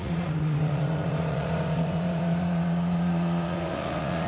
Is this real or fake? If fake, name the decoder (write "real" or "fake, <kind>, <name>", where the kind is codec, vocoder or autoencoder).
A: fake, vocoder, Vocos